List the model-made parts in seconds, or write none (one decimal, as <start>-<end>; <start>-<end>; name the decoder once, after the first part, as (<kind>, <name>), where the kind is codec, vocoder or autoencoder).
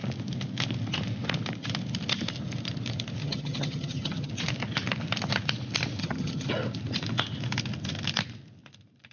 3.2-4.3 (vocoder, HiFi-GAN); 6.0-6.5